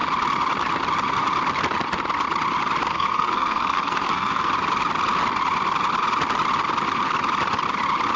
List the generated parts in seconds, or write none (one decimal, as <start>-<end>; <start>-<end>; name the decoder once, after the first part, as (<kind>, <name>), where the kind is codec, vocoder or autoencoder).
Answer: 2.9-4.5 (codec, SNAC)